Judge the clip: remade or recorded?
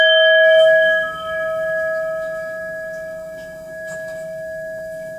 remade